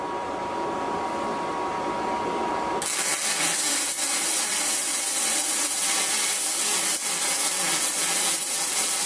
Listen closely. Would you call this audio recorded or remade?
recorded